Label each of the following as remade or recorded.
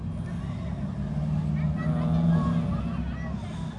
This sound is recorded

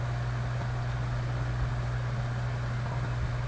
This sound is recorded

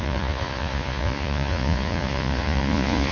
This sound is remade